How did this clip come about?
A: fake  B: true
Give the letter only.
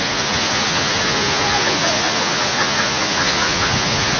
A